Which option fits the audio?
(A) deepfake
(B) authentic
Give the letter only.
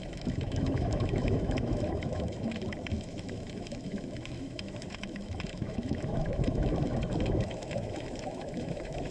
A